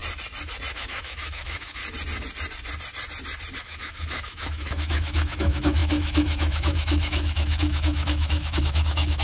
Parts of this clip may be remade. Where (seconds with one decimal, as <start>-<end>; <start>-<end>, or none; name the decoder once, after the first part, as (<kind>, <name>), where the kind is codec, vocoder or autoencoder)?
0.7-1.8 (autoencoder, DAC-VAE); 3.6-9.2